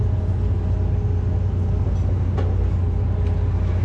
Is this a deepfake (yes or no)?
no